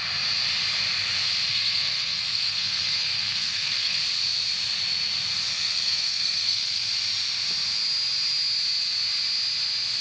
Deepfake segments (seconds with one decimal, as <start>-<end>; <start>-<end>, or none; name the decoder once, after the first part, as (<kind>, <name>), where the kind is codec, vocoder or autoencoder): 1.5-4.0 (codec, SNAC); 5.5-6.9